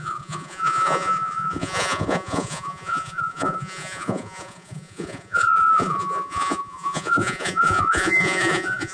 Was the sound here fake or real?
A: fake